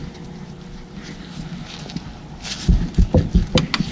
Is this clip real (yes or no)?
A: yes